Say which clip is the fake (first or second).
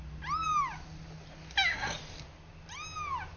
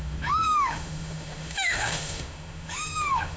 second